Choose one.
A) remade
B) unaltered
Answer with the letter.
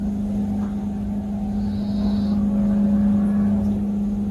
B